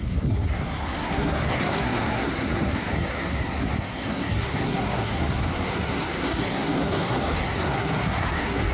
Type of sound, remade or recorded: remade